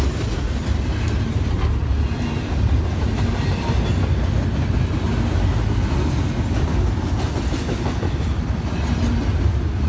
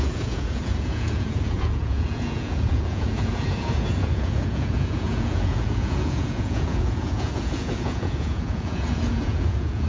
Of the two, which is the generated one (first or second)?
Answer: second